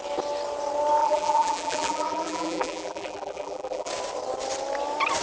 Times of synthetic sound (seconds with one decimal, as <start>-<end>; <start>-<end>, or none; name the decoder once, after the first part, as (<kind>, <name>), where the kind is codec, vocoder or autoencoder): 1.0-3.9 (vocoder, BigVGAN v2)